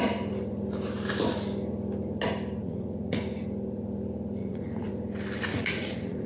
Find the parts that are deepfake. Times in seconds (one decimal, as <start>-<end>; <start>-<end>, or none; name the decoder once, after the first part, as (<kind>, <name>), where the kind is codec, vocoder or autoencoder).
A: 2.6-3.2 (vocoder, Vocos); 4.4-4.9; 5.5-6.3